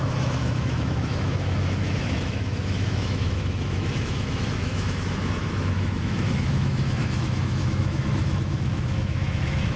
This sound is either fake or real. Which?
fake